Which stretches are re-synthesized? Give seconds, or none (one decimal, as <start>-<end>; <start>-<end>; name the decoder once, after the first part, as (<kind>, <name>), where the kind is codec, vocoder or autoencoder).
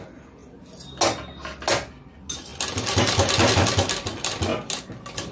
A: none